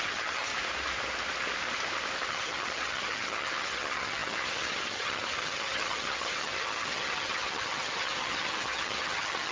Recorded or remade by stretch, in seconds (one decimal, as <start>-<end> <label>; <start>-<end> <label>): 0.0-0.5 remade; 0.5-2.3 recorded; 2.3-9.5 remade